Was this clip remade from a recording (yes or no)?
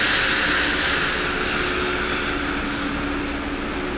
no